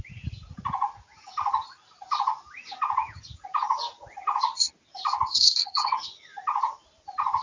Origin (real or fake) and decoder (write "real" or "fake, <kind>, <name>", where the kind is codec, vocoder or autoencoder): real